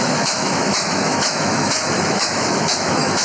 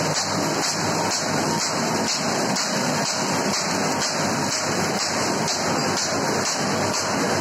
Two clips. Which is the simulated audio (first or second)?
first